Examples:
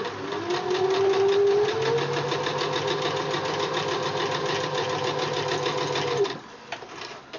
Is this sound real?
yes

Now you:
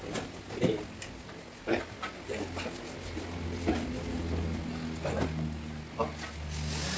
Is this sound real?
yes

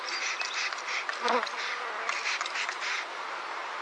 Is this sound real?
yes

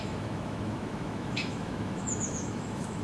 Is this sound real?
no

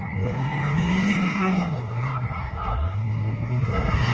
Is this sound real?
no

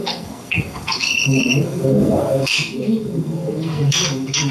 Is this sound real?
no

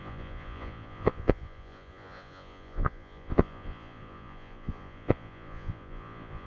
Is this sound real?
no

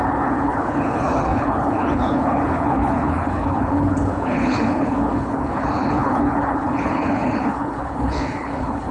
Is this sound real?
no